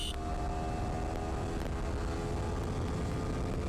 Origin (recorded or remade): recorded